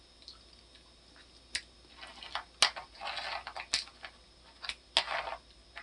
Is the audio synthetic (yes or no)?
no